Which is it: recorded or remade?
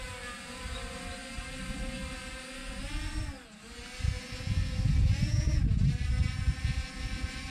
recorded